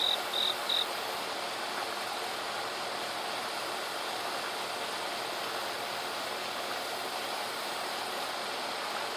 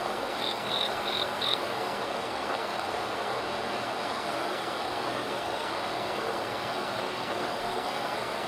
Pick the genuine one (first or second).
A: first